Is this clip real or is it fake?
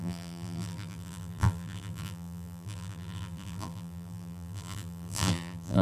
fake